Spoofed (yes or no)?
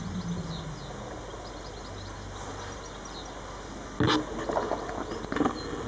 no